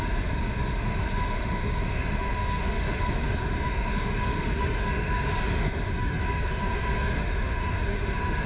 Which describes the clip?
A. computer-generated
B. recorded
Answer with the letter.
A